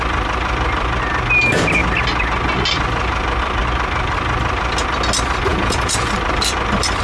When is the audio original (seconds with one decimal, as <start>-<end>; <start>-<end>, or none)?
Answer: 0.0-5.5; 6.1-7.0